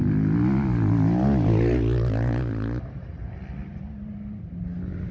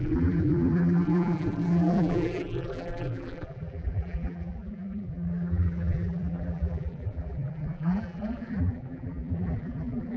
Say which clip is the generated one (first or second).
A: second